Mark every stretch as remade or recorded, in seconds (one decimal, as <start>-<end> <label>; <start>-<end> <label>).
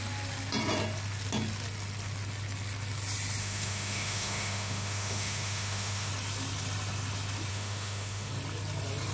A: 0.0-3.4 recorded; 3.4-6.1 remade; 6.1-7.5 recorded; 7.5-8.3 remade; 8.3-9.1 recorded